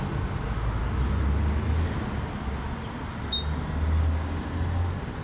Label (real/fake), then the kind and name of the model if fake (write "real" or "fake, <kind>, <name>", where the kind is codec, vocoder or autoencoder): real